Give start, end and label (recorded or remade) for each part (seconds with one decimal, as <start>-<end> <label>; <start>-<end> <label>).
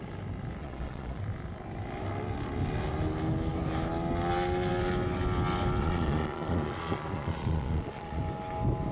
0.0-0.6 recorded; 0.6-1.2 remade; 1.2-5.8 recorded; 5.8-8.2 remade; 8.2-8.9 recorded